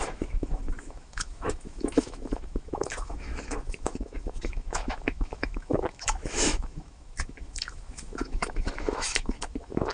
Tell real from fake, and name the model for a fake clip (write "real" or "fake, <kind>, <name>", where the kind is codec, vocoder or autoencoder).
fake, autoencoder, DAC-VAE